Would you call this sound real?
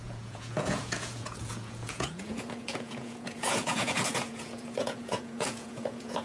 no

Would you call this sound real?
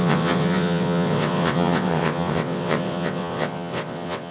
no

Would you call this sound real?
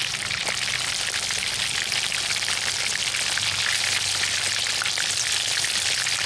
yes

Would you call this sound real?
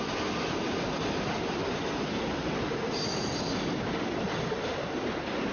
yes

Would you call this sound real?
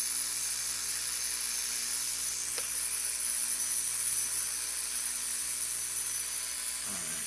yes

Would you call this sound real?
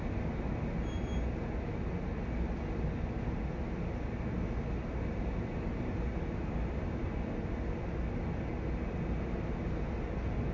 yes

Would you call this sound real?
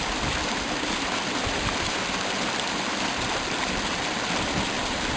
yes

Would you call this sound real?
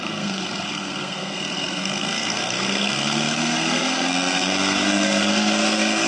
no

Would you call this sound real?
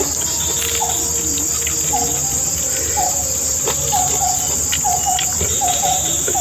yes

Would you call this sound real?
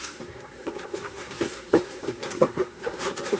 no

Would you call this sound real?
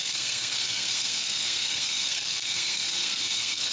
no